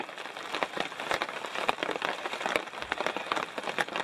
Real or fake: real